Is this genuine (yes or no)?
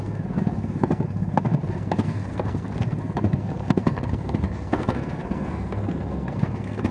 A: no